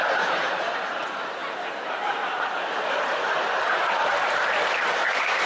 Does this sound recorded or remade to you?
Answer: remade